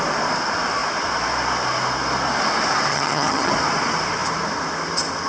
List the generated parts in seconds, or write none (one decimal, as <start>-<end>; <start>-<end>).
2.9-3.5

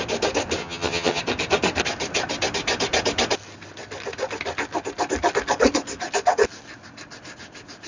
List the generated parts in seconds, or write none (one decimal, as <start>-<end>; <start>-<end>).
0.6-1.2

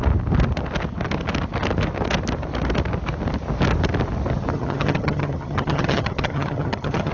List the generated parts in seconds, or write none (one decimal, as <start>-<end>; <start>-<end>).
4.5-7.1

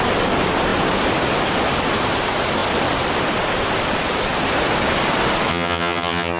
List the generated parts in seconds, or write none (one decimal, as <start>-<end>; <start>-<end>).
5.5-6.4

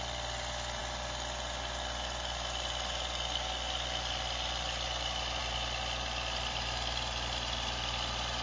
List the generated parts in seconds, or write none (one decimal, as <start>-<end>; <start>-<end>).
none

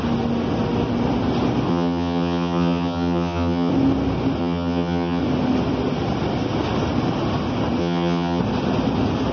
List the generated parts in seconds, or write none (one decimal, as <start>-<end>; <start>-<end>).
1.7-3.7; 4.4-5.2; 7.8-8.4